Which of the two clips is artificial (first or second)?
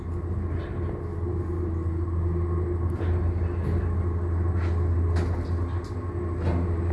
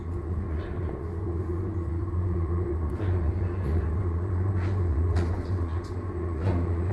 second